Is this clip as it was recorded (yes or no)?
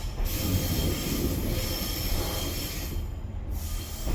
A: yes